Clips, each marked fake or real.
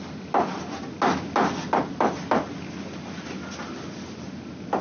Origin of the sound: real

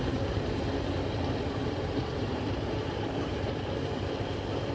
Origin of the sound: fake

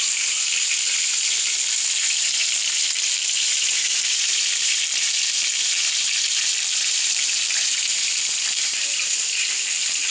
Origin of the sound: fake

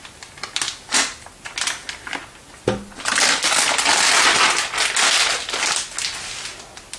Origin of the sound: real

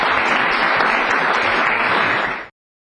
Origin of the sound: real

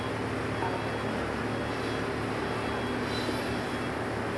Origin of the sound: real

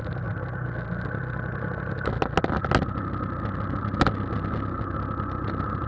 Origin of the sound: real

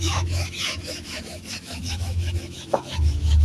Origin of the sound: fake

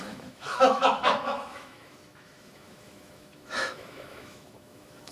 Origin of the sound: fake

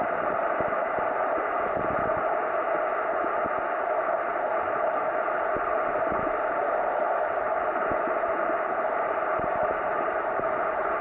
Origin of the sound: real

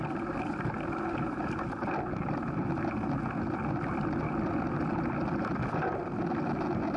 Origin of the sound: real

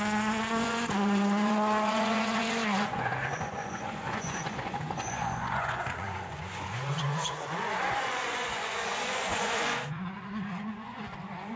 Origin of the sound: fake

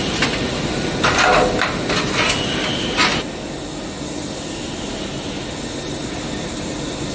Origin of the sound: real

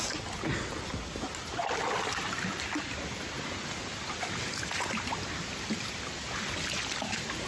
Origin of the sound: real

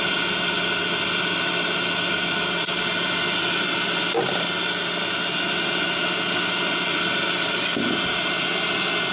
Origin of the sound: real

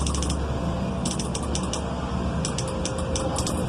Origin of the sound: real